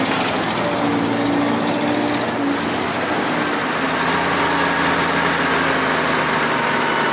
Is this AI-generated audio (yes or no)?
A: no